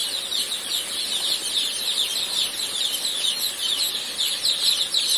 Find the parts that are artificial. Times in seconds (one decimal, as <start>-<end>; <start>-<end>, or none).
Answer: none